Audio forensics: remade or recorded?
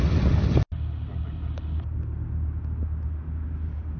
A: recorded